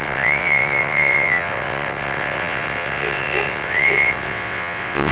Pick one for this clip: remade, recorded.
remade